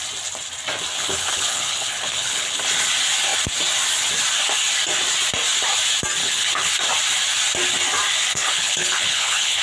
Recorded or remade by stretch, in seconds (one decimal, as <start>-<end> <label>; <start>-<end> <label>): 0.0-1.0 recorded; 1.0-2.6 remade; 2.6-6.2 recorded; 6.2-6.7 remade; 6.7-8.3 recorded; 8.3-9.6 remade